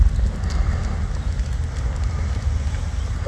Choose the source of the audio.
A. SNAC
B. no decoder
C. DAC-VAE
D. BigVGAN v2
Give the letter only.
B